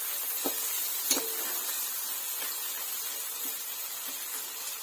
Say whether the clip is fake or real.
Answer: real